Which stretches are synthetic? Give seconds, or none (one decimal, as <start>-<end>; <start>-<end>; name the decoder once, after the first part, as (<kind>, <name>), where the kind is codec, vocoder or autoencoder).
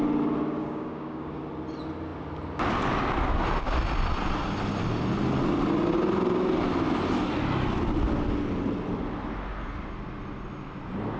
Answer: 0.6-1.4 (codec, DAC)